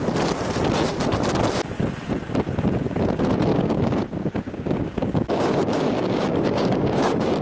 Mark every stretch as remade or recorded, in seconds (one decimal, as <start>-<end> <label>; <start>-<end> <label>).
0.0-3.5 recorded; 3.5-7.4 remade